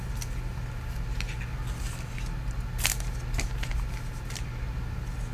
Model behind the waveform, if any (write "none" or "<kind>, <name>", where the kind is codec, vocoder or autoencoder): none